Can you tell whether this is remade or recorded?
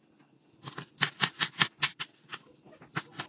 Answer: recorded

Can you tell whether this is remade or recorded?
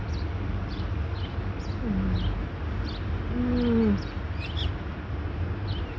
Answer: recorded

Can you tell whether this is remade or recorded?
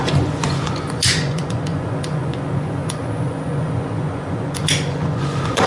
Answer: remade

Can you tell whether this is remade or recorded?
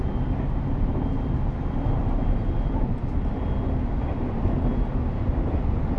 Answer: recorded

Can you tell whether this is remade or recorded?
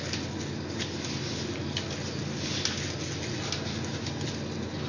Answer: recorded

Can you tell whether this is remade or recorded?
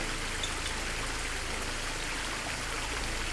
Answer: recorded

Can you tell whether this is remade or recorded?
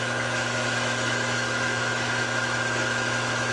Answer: remade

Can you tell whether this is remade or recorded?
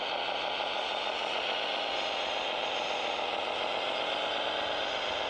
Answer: recorded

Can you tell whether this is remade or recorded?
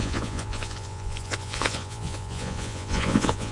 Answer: remade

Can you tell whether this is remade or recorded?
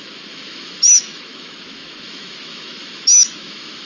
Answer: remade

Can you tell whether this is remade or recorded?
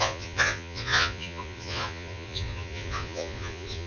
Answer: remade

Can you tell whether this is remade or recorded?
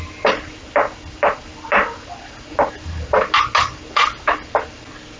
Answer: recorded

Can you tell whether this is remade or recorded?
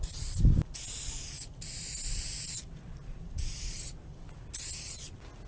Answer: recorded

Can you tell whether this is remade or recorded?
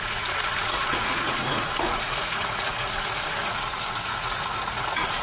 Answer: remade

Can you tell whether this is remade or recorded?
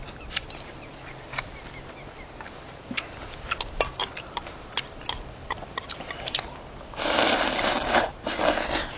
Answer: recorded